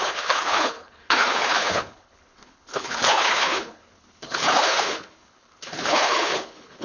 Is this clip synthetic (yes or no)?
yes